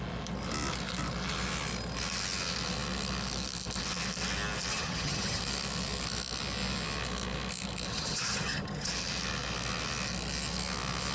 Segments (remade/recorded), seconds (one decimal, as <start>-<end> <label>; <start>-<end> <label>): 0.0-4.7 recorded; 4.7-5.4 remade; 5.4-7.9 recorded; 7.9-8.9 remade; 8.9-11.1 recorded